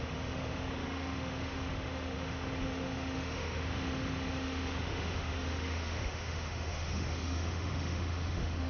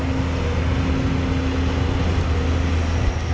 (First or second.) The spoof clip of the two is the first